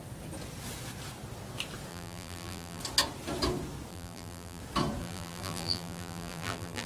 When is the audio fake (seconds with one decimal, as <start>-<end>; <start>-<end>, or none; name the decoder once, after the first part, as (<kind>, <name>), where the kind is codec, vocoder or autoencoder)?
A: 1.9-2.8 (vocoder, BigVGAN v2); 3.9-4.6; 5.0-6.9